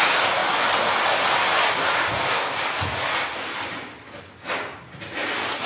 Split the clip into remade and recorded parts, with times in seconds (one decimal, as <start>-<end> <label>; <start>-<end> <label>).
0.0-5.7 recorded